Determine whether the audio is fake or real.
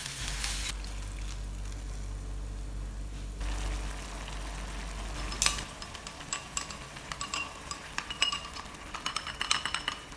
real